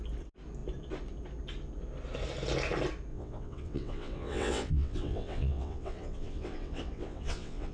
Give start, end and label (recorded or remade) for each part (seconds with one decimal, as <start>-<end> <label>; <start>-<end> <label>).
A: 0.0-3.1 recorded; 3.1-7.7 remade